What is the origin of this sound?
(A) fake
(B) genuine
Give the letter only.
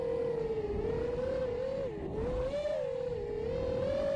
B